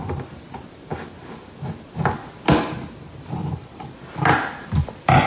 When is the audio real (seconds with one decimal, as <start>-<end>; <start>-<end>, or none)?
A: 0.0-5.3